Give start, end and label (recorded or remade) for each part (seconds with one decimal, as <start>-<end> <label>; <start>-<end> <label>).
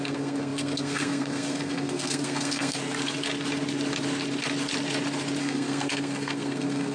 0.0-2.8 remade; 2.8-5.4 recorded; 5.4-6.9 remade